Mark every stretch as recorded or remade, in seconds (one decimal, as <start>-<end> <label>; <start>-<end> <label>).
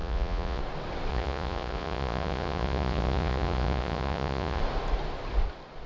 0.0-0.6 remade; 0.6-1.1 recorded; 1.1-4.6 remade; 4.6-5.9 recorded